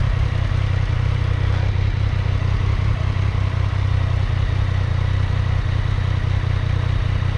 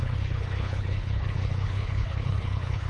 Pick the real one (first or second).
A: first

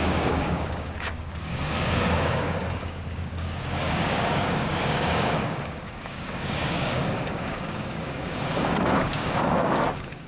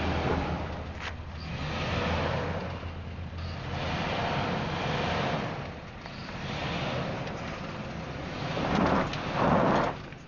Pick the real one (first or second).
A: second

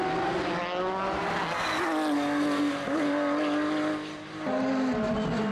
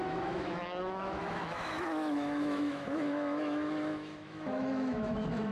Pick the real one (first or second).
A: first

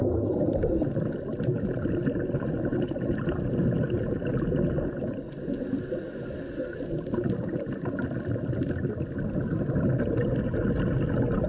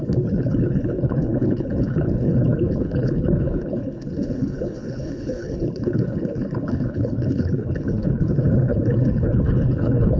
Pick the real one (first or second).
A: first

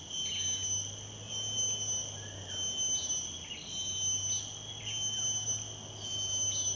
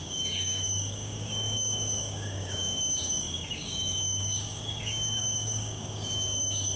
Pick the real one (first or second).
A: first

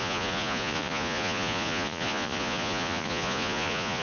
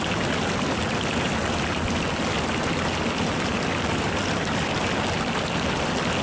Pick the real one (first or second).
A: second